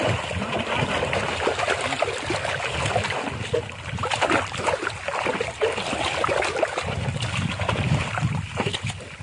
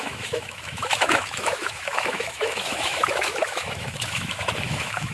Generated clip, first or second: second